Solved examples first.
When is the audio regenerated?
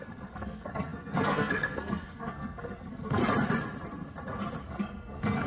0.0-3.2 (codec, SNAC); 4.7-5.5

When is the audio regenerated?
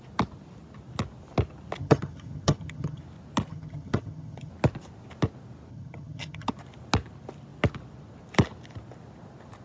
1.8-3.0 (vocoder, HiFi-GAN); 3.5-4.5; 5.7-6.5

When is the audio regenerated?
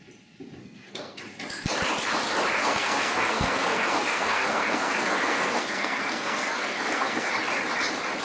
0.6-1.2 (codec, SNAC); 2.6-7.3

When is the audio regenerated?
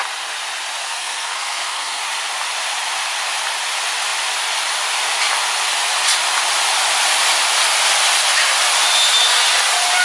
0.8-2.0 (codec, SNAC)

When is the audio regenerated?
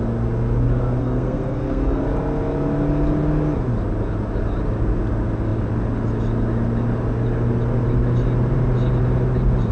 1.0-2.0 (codec, SNAC)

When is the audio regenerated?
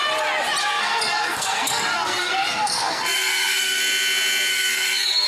0.6-3.8 (codec, SNAC); 4.5-5.3